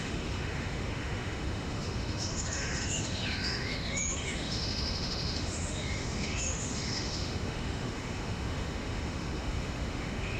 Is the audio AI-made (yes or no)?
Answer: yes